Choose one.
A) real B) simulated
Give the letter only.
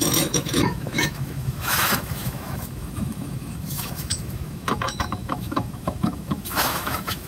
B